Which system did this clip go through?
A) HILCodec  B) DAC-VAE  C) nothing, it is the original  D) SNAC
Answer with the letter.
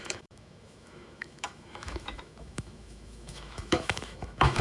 B